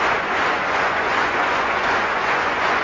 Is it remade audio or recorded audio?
remade